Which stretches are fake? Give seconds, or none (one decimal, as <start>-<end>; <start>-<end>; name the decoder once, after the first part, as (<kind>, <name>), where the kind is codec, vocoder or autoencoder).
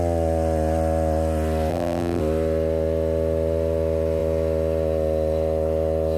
1.7-2.2 (vocoder, BigVGAN v2)